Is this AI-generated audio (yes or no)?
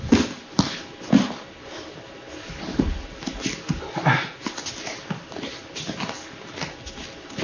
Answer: no